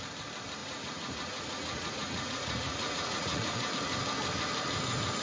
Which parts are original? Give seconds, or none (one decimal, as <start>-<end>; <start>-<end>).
0.0-0.6; 3.7-5.2